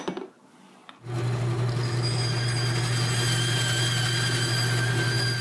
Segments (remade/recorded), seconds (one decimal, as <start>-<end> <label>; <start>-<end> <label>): 0.0-5.4 recorded